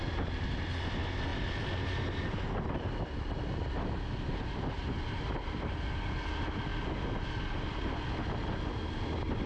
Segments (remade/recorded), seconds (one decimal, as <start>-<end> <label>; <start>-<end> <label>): 0.0-9.5 recorded